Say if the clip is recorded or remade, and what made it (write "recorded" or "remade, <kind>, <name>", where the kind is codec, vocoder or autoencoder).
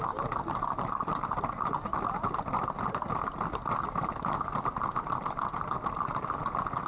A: recorded